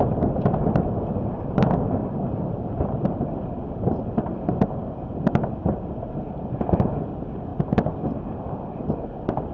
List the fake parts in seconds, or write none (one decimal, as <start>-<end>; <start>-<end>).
2.0-3.0; 5.6-6.4